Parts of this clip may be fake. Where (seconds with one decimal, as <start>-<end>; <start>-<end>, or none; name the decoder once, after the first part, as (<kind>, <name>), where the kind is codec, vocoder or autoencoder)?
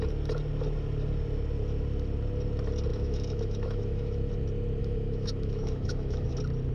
2.9-4.3 (autoencoder, DAC-VAE); 4.8-6.3